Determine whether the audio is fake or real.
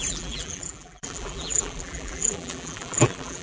fake